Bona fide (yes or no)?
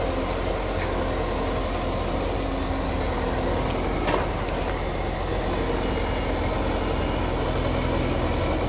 yes